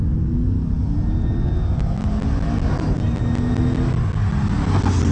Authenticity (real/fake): real